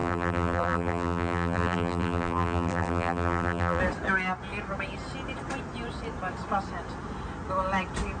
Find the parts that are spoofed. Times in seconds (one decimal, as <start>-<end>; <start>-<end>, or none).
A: 0.0-3.8